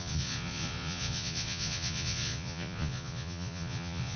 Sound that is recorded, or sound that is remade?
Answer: remade